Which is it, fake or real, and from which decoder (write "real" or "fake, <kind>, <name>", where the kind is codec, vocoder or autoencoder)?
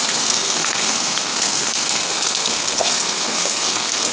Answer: fake, codec, SNAC